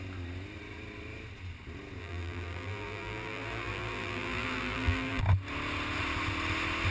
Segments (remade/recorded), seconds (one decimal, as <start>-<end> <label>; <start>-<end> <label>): 0.0-2.0 recorded; 2.0-5.2 remade; 5.2-6.9 recorded